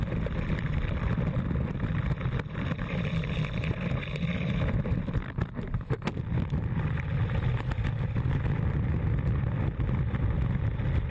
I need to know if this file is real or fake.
fake